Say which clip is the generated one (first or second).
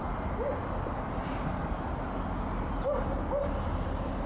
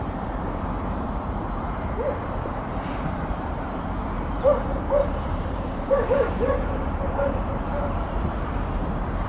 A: second